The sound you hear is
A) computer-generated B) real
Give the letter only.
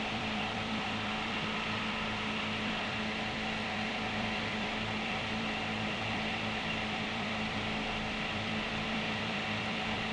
A